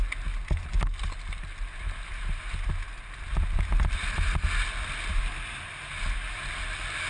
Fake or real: real